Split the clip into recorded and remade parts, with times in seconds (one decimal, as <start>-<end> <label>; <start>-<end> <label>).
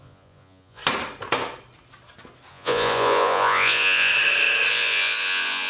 0.0-0.8 remade; 0.8-2.5 recorded; 2.5-4.1 remade; 4.1-4.7 recorded; 4.7-5.7 remade